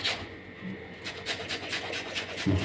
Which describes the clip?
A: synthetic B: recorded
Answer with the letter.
A